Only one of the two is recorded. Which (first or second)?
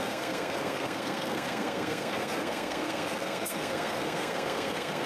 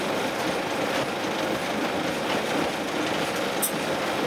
second